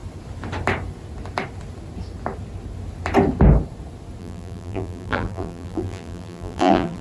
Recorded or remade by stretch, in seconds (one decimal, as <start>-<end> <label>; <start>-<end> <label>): 0.0-4.2 recorded; 4.2-7.0 remade